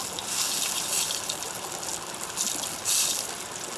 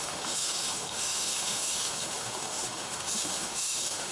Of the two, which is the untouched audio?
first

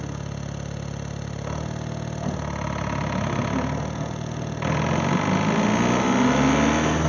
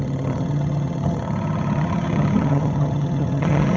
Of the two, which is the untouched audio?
first